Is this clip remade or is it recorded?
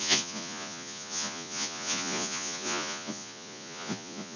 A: remade